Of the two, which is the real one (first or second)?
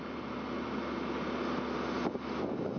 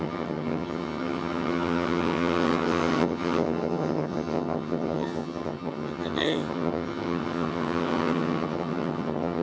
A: first